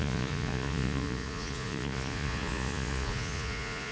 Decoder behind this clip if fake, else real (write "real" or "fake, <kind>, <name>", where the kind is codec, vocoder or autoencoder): fake, vocoder, Vocos